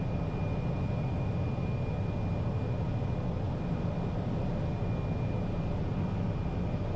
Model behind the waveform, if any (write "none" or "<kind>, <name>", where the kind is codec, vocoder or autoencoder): none